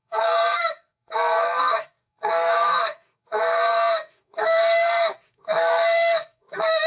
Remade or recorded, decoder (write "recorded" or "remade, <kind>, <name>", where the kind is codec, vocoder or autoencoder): remade, codec, SNAC